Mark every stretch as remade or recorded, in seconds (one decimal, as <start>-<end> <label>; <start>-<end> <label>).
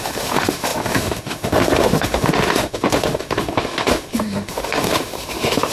0.0-5.7 remade